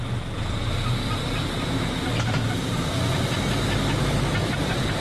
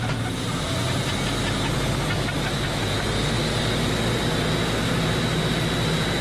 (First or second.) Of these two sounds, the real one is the second